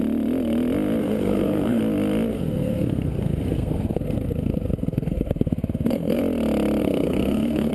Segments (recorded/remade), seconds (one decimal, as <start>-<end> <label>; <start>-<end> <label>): 0.0-1.0 recorded; 1.0-1.8 remade; 1.8-2.3 recorded; 2.3-6.2 remade; 6.2-6.8 recorded; 6.8-7.7 remade